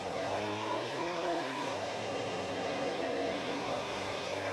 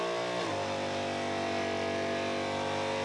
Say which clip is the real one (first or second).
second